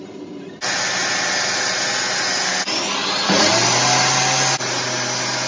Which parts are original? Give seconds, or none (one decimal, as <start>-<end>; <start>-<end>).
0.0-5.5